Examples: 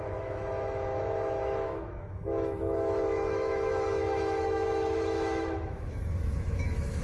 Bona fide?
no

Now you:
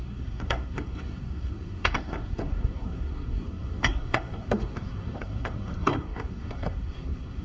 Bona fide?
no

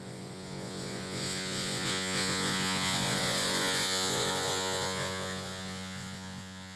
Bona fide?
no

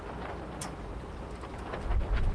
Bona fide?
yes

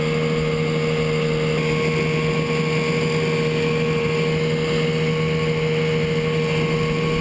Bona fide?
yes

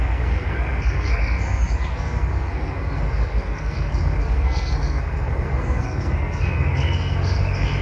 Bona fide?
no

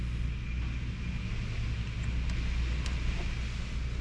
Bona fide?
yes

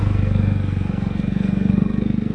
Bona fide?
no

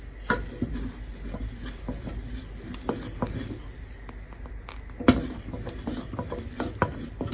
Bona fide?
yes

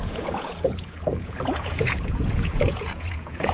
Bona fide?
no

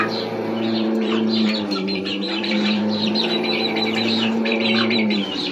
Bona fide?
no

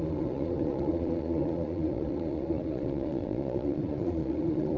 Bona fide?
no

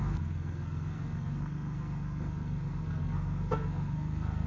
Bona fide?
no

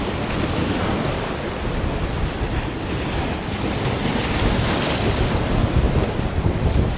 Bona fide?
yes